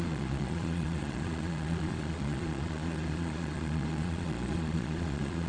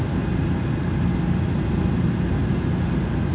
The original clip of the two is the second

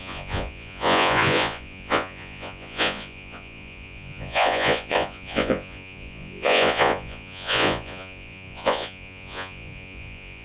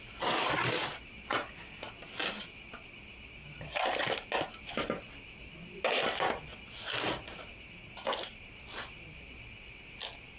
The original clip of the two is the second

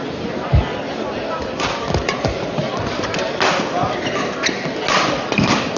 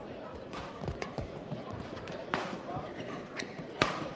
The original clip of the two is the first